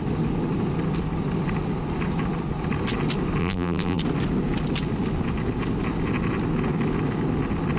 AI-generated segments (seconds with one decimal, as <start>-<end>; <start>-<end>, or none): 3.4-4.0